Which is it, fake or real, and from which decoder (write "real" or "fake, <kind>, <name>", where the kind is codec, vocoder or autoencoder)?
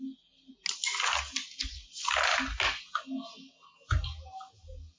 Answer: real